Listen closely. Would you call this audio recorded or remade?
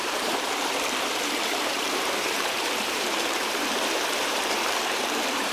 remade